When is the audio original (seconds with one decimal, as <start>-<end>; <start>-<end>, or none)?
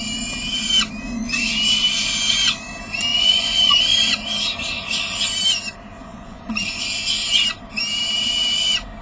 0.0-3.1; 3.8-6.0; 6.5-9.0